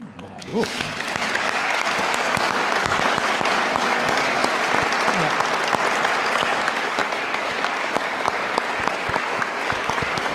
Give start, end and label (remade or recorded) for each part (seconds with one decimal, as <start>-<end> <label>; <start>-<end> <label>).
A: 0.0-4.4 remade; 4.4-6.2 recorded; 6.2-10.3 remade